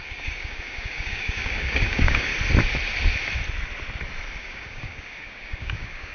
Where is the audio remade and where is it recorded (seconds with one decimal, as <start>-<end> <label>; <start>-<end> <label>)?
0.0-2.3 remade; 2.3-4.4 recorded; 4.4-6.1 remade